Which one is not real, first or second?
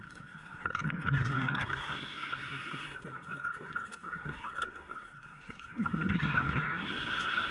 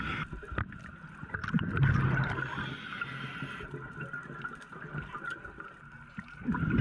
first